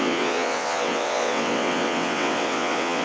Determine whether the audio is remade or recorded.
remade